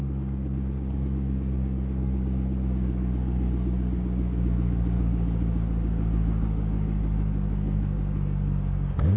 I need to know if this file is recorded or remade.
remade